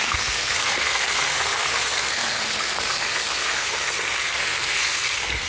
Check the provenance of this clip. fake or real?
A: fake